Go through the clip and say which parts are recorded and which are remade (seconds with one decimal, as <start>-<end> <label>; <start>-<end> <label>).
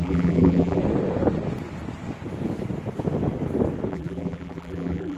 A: 0.0-0.8 remade; 0.8-3.9 recorded; 3.9-5.2 remade